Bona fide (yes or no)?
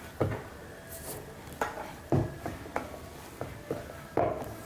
yes